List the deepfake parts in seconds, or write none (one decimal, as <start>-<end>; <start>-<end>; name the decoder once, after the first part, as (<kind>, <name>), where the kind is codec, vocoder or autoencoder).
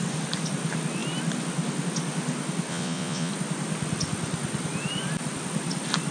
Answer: 2.7-3.3 (vocoder, Vocos)